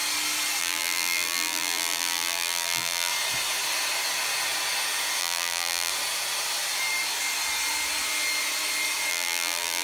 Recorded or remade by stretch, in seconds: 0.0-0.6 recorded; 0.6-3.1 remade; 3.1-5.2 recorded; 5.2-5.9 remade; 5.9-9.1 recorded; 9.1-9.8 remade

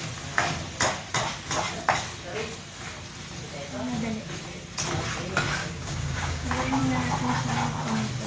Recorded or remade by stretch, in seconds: 0.0-5.6 recorded; 5.6-6.8 remade; 6.8-8.3 recorded